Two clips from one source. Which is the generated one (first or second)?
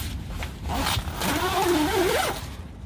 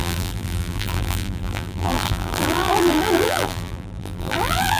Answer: second